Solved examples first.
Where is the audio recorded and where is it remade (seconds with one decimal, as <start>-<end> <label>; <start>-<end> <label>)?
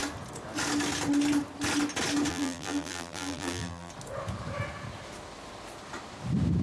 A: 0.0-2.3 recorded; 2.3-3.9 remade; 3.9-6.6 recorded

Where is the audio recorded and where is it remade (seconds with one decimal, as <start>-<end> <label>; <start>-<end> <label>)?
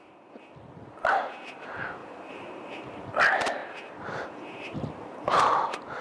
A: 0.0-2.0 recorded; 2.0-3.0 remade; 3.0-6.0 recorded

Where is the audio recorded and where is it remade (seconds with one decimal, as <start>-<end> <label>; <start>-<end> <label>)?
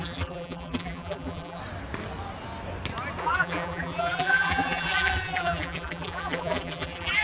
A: 0.0-1.6 remade; 1.6-3.2 recorded; 3.2-7.2 remade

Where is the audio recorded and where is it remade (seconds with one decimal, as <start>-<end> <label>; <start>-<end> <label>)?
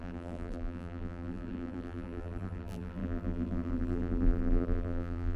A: 0.0-5.4 remade